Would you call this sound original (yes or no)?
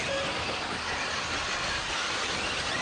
yes